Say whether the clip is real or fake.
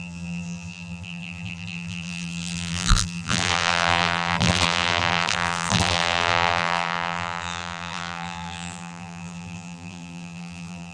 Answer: fake